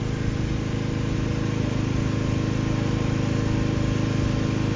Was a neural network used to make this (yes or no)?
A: no